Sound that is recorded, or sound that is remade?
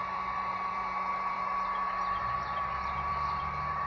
remade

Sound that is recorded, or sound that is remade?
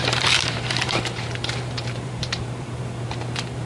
remade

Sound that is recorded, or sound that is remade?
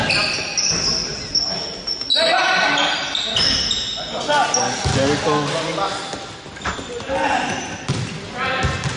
recorded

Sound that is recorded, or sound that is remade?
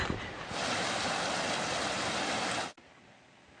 recorded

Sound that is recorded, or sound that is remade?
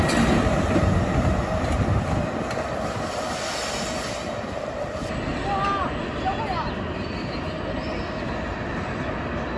recorded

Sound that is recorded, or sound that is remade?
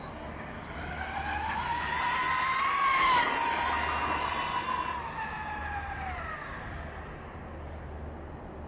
recorded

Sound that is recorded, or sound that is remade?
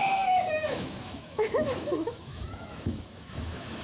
remade